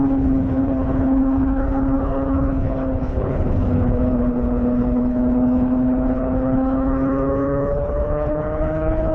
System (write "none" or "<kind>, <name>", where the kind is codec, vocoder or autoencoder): codec, HILCodec